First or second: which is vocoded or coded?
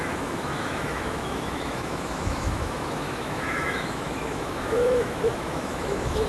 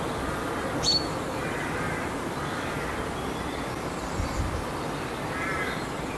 first